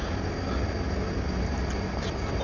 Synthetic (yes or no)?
no